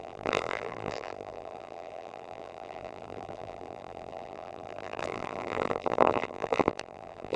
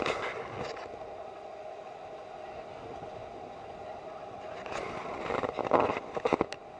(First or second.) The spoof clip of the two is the first